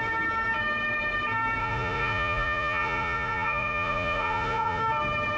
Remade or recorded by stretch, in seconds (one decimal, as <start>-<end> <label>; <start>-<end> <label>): 0.0-1.6 recorded; 1.6-4.8 remade; 4.8-5.4 recorded